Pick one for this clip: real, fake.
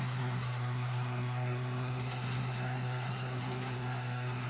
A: fake